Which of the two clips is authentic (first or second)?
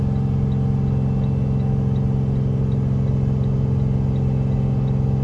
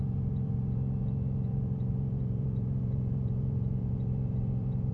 first